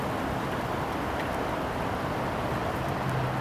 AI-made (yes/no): no